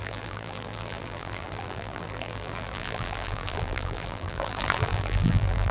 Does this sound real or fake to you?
fake